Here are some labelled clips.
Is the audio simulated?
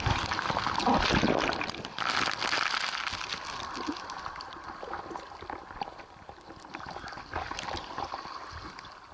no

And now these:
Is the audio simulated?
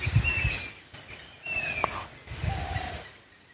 no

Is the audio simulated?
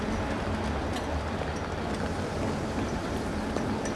no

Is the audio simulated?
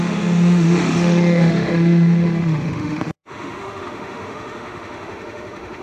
yes